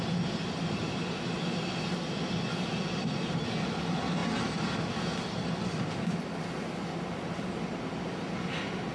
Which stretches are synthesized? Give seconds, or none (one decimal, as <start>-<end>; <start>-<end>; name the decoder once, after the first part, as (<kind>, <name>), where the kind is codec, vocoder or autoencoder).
none